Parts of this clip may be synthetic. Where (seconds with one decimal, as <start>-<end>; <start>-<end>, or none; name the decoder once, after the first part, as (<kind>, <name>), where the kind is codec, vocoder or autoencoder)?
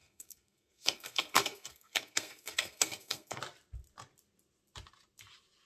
0.0-3.4 (codec, SNAC)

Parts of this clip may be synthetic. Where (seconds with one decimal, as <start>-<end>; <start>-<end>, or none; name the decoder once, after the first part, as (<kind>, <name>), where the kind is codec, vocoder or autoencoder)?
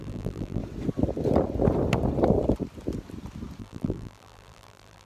0.0-0.6 (vocoder, BigVGAN v2); 3.6-5.0